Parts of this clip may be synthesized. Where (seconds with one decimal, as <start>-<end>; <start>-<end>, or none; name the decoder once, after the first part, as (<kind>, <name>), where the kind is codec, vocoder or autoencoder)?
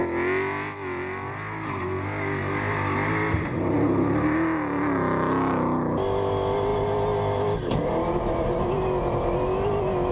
none